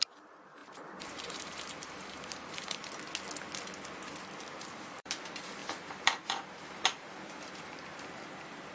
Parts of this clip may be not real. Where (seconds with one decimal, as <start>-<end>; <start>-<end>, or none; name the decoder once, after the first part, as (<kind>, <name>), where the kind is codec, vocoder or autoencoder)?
0.0-2.8 (vocoder, BigVGAN v2); 4.6-7.9